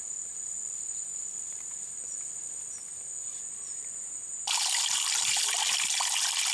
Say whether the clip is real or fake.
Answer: real